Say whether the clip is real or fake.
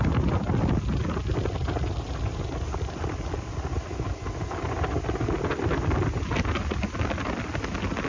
real